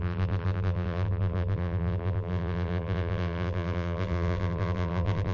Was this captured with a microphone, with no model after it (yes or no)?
no